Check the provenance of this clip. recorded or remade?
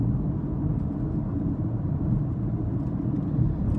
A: recorded